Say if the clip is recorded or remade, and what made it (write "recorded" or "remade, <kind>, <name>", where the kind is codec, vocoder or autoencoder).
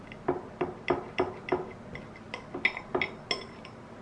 recorded